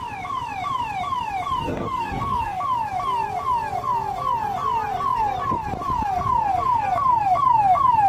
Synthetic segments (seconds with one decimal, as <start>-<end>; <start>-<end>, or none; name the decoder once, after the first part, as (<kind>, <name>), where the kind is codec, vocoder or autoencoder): 1.6-2.6 (codec, SNAC)